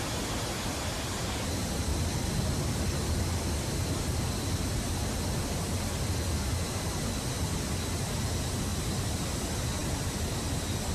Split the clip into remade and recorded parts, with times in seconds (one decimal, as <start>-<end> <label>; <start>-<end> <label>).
0.0-10.9 recorded